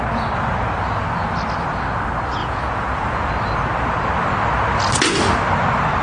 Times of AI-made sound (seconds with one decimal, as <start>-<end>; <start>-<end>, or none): 2.4-3.3